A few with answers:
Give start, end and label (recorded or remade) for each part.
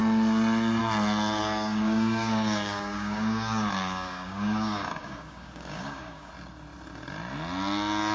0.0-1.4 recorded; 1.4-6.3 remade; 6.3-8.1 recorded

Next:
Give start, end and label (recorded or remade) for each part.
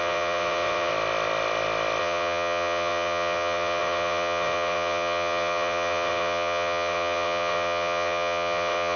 0.0-0.9 remade; 0.9-2.0 recorded; 2.0-9.0 remade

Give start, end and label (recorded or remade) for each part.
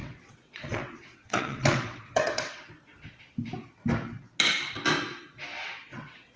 0.0-2.7 remade; 2.7-5.5 recorded; 5.5-6.4 remade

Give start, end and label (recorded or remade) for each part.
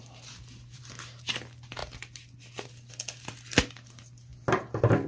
0.0-5.1 recorded